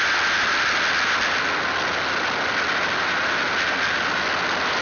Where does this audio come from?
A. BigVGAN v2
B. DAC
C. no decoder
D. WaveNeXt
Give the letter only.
C